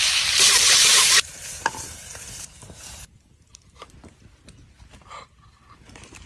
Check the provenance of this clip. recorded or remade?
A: remade